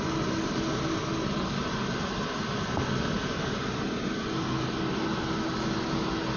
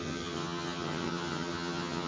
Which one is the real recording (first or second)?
first